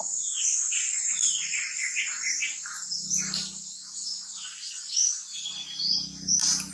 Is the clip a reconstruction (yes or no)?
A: no